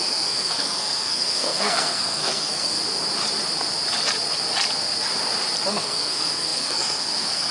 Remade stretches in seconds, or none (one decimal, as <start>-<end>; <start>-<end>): 0.0-2.8; 5.7-7.5